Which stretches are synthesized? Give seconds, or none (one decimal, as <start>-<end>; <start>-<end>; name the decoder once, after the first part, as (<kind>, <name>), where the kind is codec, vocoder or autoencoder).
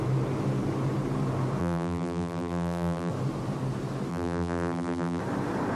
1.6-3.1 (vocoder, BigVGAN v2); 4.1-5.2